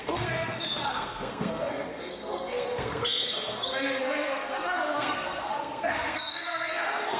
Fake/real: fake